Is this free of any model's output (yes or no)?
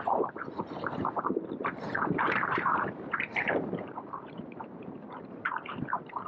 no